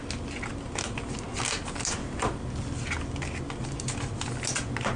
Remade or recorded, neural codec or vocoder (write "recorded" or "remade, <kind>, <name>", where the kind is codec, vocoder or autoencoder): recorded